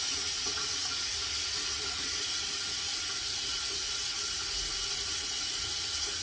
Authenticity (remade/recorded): remade